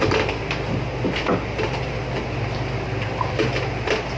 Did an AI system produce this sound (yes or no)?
no